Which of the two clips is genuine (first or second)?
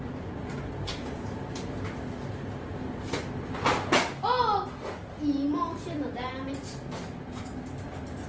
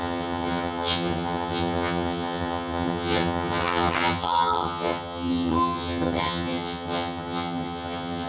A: first